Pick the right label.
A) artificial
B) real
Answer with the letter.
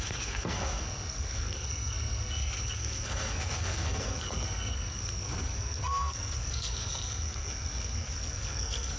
A